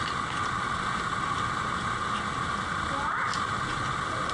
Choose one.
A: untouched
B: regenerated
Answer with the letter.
A